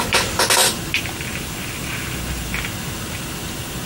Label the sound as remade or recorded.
recorded